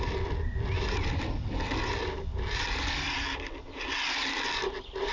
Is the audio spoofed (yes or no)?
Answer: no